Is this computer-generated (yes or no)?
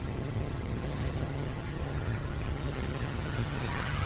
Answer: yes